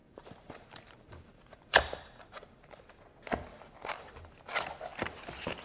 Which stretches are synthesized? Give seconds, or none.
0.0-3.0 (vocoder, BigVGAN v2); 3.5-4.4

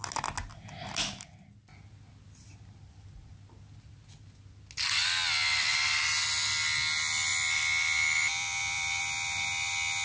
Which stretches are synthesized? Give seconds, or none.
7.3-9.0 (vocoder, BigVGAN v2)

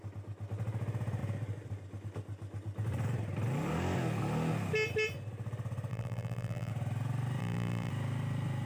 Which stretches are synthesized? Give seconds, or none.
5.9-6.7 (vocoder, BigVGAN v2); 7.4-7.9